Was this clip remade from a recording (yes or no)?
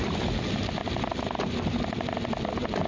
no